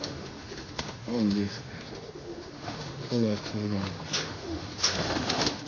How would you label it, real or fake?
fake